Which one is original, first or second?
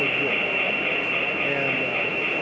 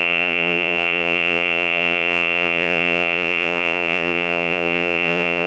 first